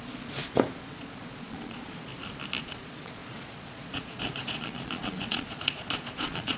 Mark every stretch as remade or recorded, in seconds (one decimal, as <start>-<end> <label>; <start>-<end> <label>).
0.0-0.4 remade; 0.4-0.9 recorded; 0.9-2.1 remade; 2.1-2.6 recorded; 2.6-6.6 remade